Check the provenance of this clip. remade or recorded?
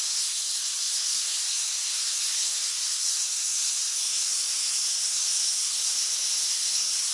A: remade